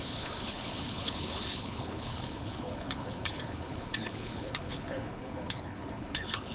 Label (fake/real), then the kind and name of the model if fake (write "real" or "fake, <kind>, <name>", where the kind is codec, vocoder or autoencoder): fake, codec, HILCodec